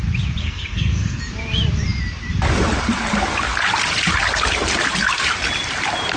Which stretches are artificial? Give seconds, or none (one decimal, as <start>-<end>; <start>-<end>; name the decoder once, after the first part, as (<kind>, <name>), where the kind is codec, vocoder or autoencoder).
0.4-1.2 (codec, SNAC)